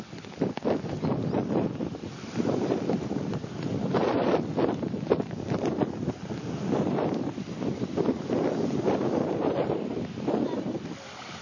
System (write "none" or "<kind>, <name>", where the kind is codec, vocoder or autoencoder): vocoder, BigVGAN v2